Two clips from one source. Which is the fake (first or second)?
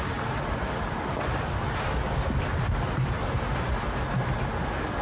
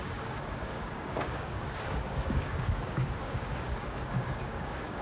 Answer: second